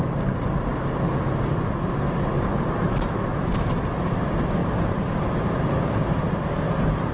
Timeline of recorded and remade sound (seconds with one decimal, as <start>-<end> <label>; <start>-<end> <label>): 0.0-4.6 recorded; 4.6-5.4 remade; 5.4-7.1 recorded